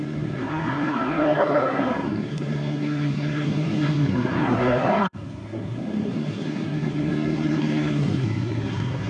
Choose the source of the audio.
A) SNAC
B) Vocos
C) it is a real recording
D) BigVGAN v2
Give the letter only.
A